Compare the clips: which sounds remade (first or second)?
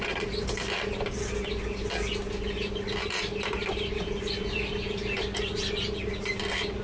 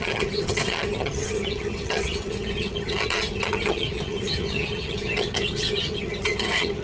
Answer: second